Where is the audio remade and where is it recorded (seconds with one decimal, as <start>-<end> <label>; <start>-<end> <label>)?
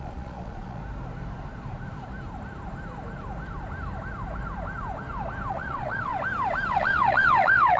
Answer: 0.0-0.8 remade; 0.8-5.5 recorded; 5.5-6.1 remade; 6.1-6.7 recorded; 6.7-7.8 remade